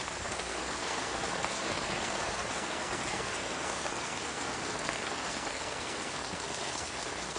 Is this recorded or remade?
remade